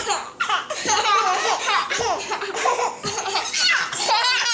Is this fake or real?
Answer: real